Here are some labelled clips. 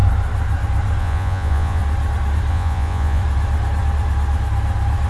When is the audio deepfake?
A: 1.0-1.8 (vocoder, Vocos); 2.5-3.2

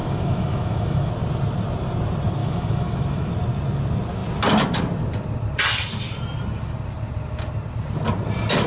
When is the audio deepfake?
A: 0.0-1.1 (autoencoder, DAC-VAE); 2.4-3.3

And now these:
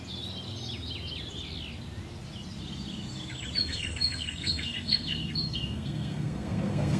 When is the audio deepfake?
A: 3.6-7.0 (codec, SNAC)

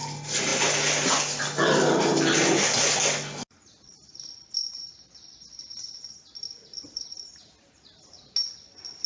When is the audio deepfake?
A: none